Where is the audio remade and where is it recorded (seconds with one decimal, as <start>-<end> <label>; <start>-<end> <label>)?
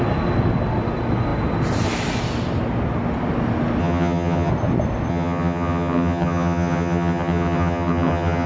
0.0-3.8 recorded; 3.8-4.5 remade; 4.5-5.1 recorded; 5.1-8.5 remade